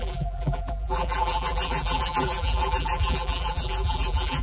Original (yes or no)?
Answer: no